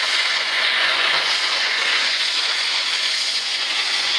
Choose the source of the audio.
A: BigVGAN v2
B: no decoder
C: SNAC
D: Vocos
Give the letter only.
D